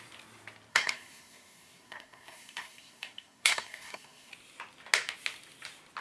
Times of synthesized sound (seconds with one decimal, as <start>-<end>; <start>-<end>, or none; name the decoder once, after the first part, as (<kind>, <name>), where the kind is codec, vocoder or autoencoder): 0.7-4.3 (codec, SNAC)